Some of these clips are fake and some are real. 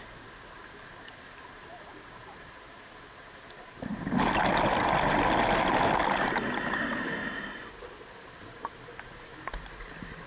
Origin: real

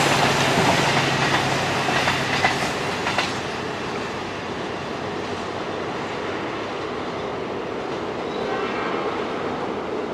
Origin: real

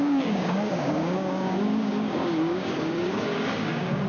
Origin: fake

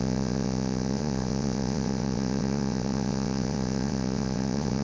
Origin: fake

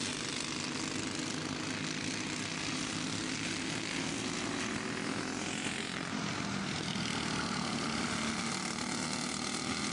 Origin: real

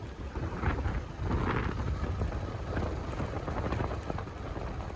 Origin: real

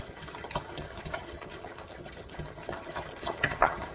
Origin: fake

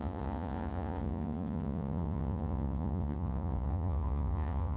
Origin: fake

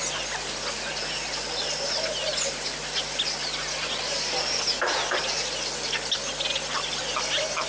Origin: real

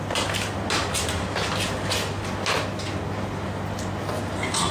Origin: real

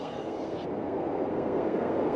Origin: fake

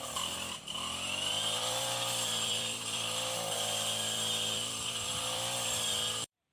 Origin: fake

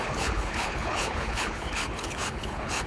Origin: fake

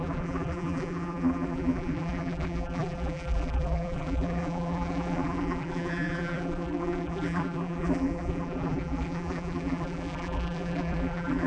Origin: fake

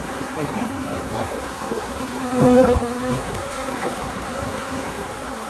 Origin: fake